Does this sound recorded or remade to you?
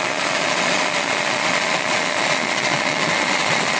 remade